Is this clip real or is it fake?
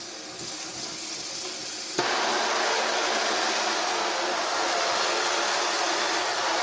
real